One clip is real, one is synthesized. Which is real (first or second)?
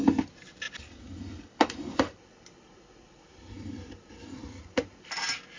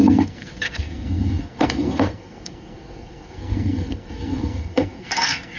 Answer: first